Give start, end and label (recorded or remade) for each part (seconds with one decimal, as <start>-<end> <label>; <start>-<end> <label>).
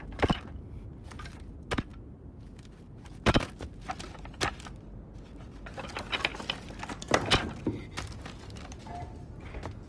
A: 0.0-9.9 recorded